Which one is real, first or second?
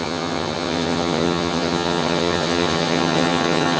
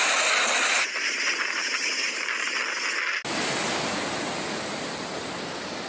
second